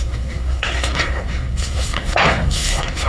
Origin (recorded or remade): remade